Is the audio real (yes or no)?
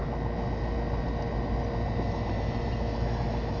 yes